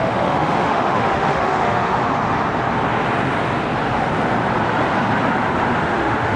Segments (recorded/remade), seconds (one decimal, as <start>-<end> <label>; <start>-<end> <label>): 0.0-2.0 remade; 2.0-5.8 recorded; 5.8-6.4 remade